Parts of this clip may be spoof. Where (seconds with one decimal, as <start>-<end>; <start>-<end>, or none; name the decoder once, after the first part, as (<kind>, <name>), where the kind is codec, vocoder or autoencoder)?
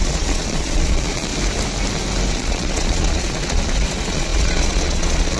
0.0-1.3 (vocoder, Vocos); 2.3-5.4